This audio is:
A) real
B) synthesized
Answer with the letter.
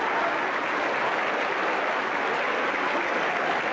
A